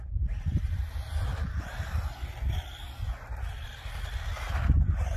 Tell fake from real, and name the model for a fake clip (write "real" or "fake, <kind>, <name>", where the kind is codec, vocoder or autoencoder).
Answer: real